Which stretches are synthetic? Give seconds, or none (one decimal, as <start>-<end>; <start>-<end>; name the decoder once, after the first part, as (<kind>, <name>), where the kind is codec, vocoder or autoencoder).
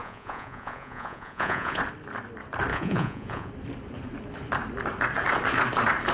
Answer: 0.0-1.8 (vocoder, Vocos); 2.7-3.5